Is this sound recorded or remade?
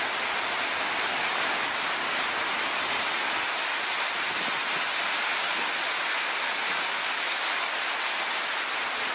recorded